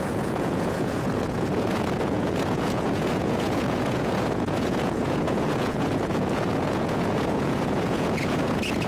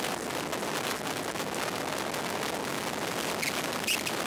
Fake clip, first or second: first